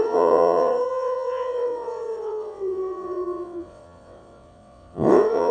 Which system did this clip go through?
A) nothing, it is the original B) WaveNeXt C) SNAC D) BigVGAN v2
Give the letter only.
B